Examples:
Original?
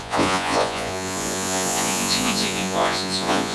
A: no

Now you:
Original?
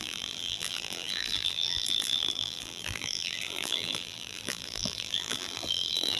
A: no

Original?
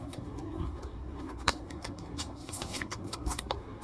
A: no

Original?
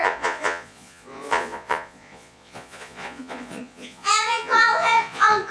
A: no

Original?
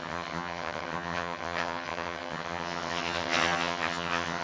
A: no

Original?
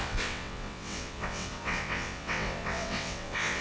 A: no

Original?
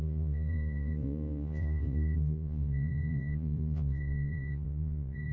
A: no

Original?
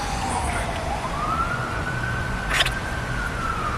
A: no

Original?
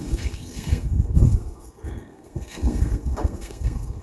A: no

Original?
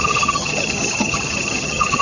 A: no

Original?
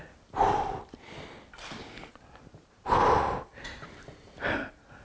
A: yes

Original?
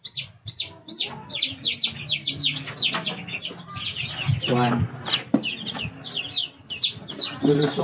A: yes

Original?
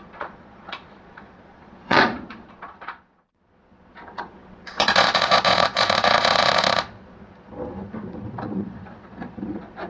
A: no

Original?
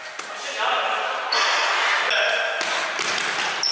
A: yes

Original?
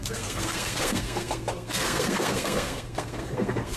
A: no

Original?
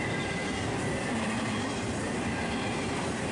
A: no